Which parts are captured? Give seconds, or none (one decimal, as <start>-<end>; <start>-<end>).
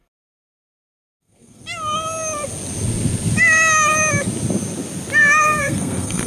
1.6-5.4